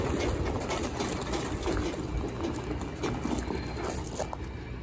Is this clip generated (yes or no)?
no